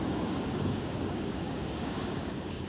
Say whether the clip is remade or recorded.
remade